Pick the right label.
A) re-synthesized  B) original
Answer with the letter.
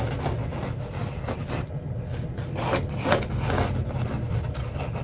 B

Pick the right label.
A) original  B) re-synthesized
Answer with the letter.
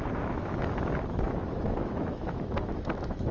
B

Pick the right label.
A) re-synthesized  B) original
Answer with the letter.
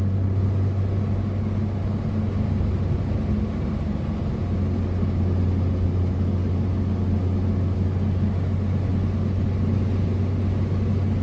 B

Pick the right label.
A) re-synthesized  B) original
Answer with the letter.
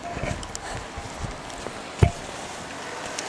B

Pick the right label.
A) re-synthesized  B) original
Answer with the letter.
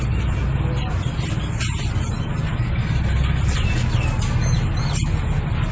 B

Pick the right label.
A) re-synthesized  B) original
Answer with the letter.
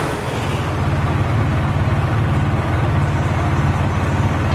B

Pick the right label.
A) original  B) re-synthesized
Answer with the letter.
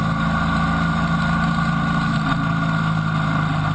A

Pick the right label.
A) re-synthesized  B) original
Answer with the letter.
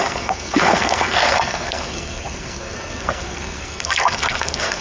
A